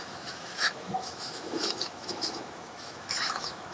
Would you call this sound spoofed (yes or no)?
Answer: yes